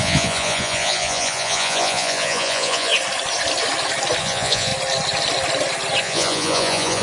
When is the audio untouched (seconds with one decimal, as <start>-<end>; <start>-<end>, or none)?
2.9-4.2; 4.7-6.0